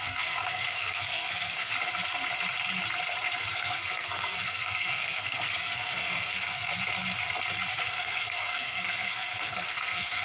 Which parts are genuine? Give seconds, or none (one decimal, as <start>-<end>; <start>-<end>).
1.7-3.5; 6.7-7.9

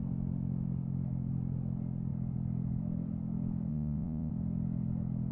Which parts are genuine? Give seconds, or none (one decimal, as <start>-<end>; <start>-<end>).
0.0-3.7; 4.3-5.3

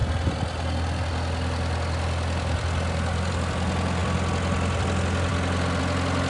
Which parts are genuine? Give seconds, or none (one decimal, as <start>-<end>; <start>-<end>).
0.0-6.3

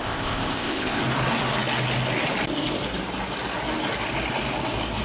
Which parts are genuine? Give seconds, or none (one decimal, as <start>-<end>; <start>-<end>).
1.0-5.0

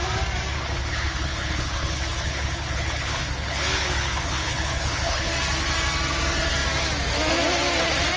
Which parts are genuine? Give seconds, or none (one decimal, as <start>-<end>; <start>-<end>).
0.0-0.5; 5.3-8.2